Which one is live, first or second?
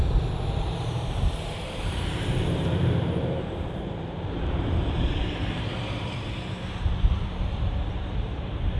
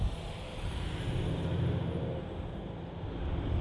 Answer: second